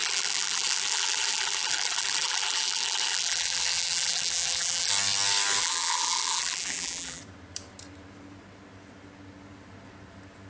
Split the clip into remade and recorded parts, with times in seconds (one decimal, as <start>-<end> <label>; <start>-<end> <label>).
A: 0.0-4.9 remade; 4.9-5.6 recorded; 5.6-7.2 remade; 7.2-10.5 recorded